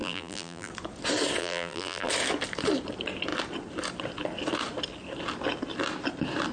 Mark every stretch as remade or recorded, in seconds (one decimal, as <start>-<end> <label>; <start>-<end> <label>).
0.0-0.7 remade; 0.7-1.4 recorded; 1.4-2.1 remade; 2.1-6.5 recorded